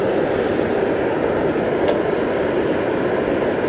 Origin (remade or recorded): recorded